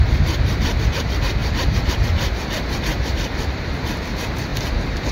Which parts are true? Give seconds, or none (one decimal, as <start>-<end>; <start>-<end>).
0.0-1.4; 1.9-2.9; 3.7-5.1